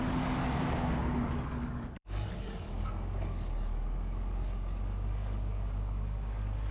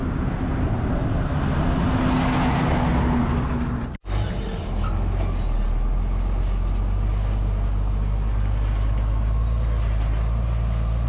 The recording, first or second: second